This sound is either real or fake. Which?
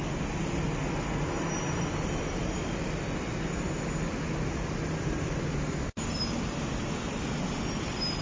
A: real